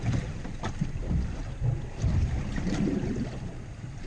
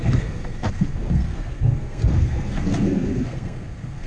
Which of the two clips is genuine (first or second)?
first